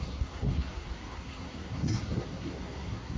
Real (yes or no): no